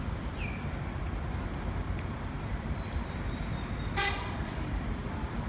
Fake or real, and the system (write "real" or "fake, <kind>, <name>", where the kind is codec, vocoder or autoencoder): fake, vocoder, BigVGAN v2